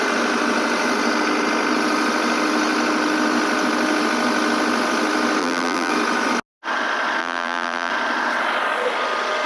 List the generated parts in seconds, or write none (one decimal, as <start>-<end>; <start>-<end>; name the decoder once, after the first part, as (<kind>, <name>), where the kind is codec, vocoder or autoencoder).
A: 5.4-5.9 (vocoder, BigVGAN v2); 7.2-7.9